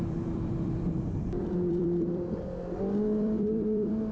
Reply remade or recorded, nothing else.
remade